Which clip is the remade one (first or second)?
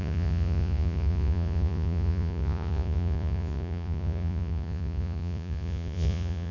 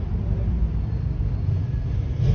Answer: first